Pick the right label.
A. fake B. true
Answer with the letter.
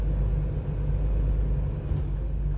B